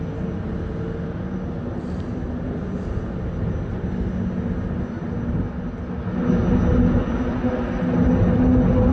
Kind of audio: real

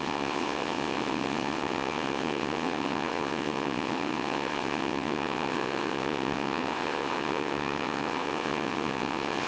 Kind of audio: fake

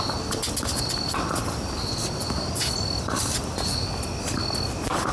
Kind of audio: real